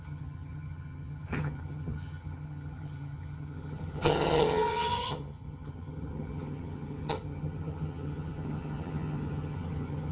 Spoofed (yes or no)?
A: yes